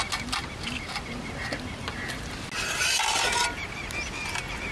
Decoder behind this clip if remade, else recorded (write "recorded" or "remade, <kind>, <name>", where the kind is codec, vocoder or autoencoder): recorded